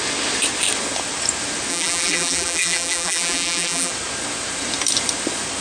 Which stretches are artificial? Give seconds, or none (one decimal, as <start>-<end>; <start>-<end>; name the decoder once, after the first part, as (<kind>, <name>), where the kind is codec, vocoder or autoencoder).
1.7-3.9 (vocoder, BigVGAN v2)